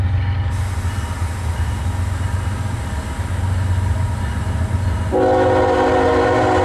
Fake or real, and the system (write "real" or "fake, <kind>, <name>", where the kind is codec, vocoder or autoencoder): real